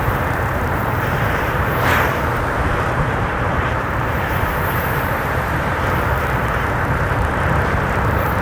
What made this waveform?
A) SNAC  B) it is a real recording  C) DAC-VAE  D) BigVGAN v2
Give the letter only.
D